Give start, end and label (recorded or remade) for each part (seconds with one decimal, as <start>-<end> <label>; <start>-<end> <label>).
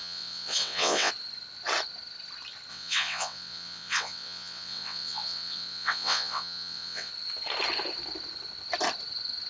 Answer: 0.0-1.1 remade; 1.1-2.7 recorded; 2.7-7.1 remade; 7.1-9.5 recorded